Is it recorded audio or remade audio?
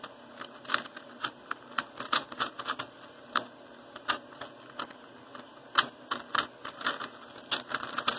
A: recorded